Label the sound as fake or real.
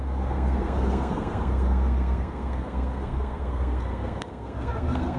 fake